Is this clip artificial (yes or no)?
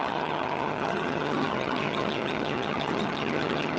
yes